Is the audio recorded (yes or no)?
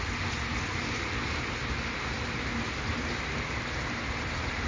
yes